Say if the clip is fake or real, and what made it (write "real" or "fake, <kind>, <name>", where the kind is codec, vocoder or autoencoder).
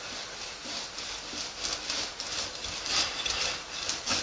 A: real